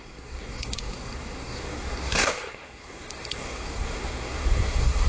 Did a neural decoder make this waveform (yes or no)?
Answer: yes